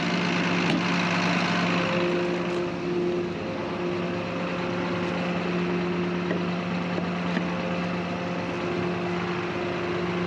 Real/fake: real